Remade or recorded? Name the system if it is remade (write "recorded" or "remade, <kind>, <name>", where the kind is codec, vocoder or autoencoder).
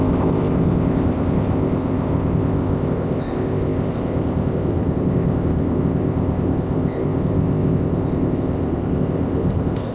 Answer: remade, codec, ZipCodec